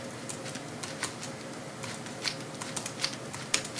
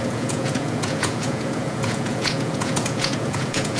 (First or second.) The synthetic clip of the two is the second